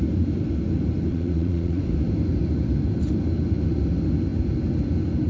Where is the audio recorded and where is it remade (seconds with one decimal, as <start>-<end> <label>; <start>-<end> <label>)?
0.0-1.1 recorded; 1.1-1.8 remade; 1.8-5.3 recorded